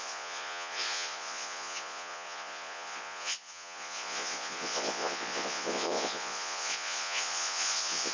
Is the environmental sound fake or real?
fake